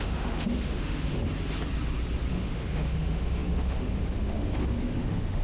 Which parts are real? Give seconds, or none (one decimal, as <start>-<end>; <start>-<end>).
1.2-2.3